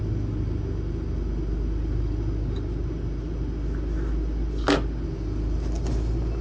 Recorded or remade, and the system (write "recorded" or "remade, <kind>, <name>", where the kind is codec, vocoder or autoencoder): recorded